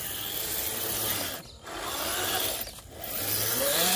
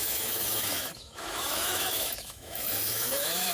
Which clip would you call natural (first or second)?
first